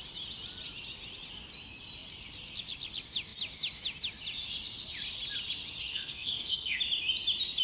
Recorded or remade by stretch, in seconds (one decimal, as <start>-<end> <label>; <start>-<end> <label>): 0.0-5.9 recorded; 5.9-6.8 remade; 6.8-7.6 recorded

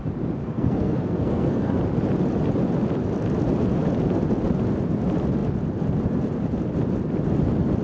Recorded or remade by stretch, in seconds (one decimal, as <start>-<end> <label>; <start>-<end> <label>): 0.0-0.4 recorded; 0.4-1.8 remade; 1.8-7.8 recorded

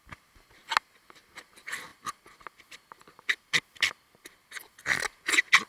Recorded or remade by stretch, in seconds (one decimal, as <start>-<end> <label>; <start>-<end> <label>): 0.0-5.7 recorded

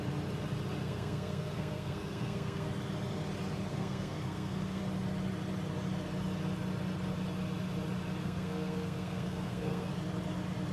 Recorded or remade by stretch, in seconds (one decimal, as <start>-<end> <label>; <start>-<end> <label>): 0.0-0.8 recorded; 0.8-2.7 remade; 2.7-3.7 recorded; 3.7-4.8 remade; 4.8-8.2 recorded; 8.2-9.9 remade; 9.9-10.7 recorded

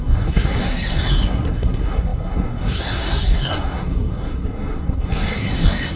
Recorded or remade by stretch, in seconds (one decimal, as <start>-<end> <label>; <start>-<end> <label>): 0.0-6.0 remade

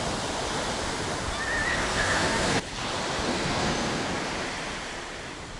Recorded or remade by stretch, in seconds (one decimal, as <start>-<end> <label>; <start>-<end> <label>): 0.0-1.7 recorded; 1.7-2.6 remade; 2.6-3.3 recorded; 3.3-4.1 remade; 4.1-5.6 recorded

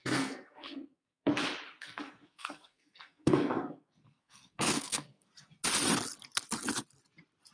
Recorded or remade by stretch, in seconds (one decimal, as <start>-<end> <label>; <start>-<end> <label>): 0.0-1.3 remade; 1.3-1.8 recorded; 1.8-5.3 remade; 5.3-7.5 recorded

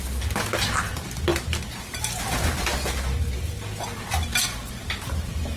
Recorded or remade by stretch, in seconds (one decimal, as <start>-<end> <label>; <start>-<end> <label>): 0.0-5.6 recorded